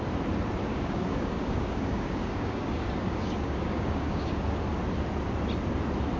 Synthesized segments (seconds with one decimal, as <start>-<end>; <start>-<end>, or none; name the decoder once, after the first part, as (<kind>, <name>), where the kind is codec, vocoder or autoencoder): 0.7-4.4 (codec, DAC)